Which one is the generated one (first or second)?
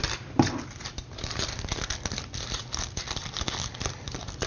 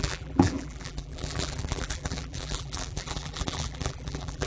second